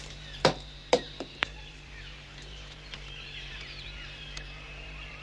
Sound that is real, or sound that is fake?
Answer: fake